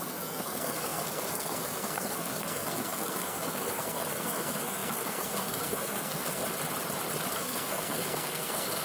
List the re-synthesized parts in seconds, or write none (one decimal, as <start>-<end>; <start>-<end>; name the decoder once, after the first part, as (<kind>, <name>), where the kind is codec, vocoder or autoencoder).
0.0-6.4 (codec, SNAC); 7.3-8.8

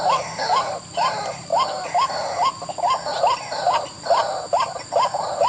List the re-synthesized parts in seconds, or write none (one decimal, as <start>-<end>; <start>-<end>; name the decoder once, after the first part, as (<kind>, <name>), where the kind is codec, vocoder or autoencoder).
none